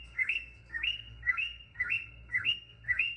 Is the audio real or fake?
fake